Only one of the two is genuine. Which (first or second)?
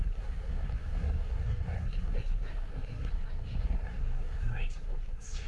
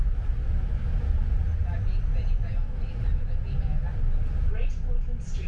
second